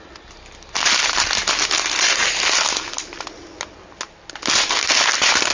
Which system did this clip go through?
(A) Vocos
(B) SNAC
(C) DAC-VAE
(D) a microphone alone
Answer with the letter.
D